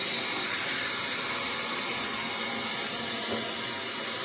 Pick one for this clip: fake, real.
real